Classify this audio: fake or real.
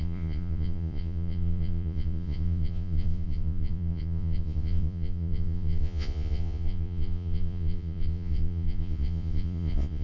fake